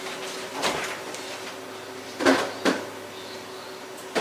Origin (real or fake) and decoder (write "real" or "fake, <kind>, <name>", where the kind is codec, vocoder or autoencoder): real